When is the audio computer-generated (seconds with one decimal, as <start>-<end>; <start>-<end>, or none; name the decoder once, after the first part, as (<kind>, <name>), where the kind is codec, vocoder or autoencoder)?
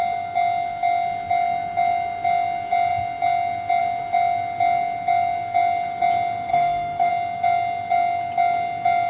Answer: 6.5-7.1 (autoencoder, DAC-VAE)